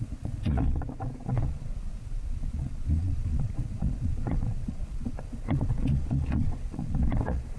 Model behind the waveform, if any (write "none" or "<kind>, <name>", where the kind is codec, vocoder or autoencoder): vocoder, Vocos